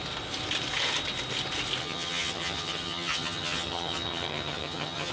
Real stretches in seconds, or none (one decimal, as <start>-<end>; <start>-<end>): 0.0-1.8